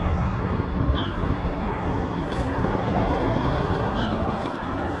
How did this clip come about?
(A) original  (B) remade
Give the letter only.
B